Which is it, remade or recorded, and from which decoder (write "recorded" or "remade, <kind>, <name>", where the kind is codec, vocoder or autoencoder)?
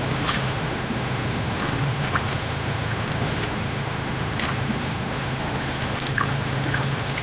remade, autoencoder, DAC-VAE